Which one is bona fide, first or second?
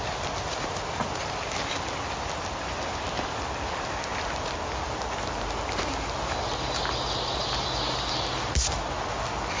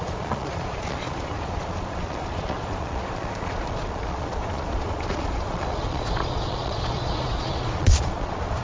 first